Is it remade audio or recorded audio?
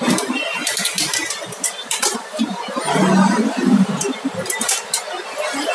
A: remade